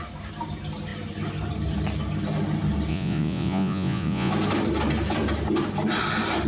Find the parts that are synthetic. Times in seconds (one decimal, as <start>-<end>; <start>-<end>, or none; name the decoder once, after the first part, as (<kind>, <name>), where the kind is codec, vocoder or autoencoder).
2.9-4.3 (vocoder, Vocos)